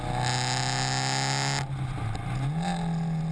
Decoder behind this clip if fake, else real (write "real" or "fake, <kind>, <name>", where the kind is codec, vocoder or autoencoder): real